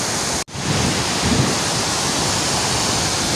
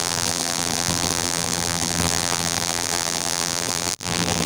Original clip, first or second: first